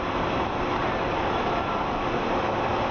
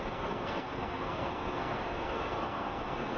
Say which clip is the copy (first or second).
second